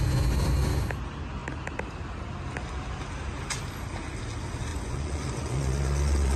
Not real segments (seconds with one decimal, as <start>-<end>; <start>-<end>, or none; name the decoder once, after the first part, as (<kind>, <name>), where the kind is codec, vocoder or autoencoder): 4.7-6.4 (vocoder, Vocos)